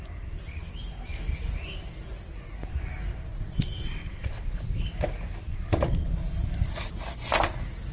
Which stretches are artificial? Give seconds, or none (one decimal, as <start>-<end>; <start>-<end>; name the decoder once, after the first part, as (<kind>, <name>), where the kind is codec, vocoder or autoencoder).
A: 3.3-4.6 (vocoder, WaveNeXt); 5.5-6.1